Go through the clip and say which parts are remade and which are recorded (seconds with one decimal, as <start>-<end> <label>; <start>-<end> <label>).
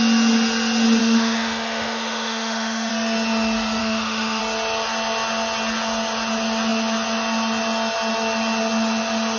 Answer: 0.0-1.0 recorded; 1.0-2.9 remade; 2.9-3.8 recorded; 3.8-4.4 remade; 4.4-9.4 recorded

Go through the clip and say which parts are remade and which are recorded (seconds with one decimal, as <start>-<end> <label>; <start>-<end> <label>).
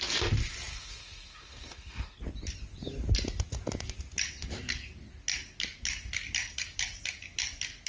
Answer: 0.0-0.7 recorded; 0.7-2.2 remade; 2.2-7.9 recorded